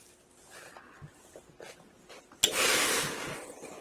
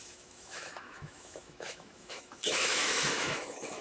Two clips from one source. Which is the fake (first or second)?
second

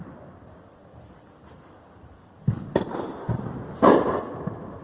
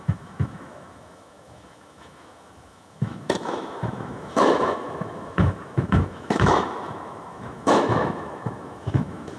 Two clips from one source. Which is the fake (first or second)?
second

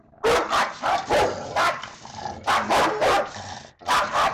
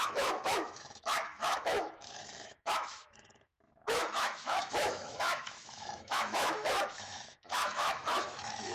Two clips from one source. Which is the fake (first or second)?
second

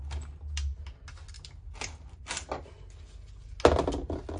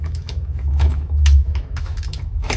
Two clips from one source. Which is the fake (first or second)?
second